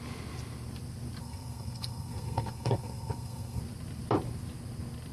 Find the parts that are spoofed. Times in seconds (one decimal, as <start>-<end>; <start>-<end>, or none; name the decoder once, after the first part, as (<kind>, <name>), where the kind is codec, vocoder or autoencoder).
1.2-3.6 (codec, SNAC)